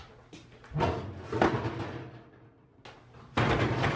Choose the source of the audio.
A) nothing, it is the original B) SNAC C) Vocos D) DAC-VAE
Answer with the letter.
A